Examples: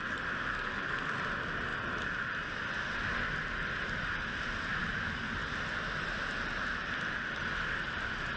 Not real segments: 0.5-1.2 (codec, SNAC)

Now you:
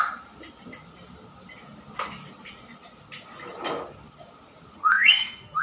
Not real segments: 4.8-5.6 (codec, SNAC)

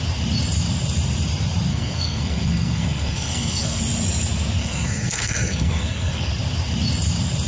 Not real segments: 1.7-3.8 (codec, SNAC); 4.6-6.3

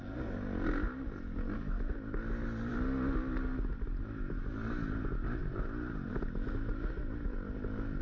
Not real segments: none